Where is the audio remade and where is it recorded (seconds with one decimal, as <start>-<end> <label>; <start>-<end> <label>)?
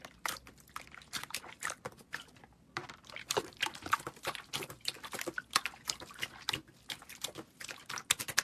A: 0.0-8.4 recorded